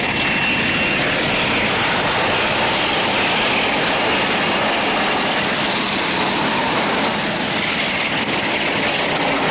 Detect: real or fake real